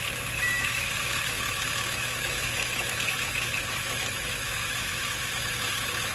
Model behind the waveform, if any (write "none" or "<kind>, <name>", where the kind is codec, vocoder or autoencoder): autoencoder, DAC-VAE